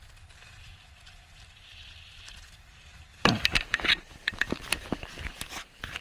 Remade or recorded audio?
remade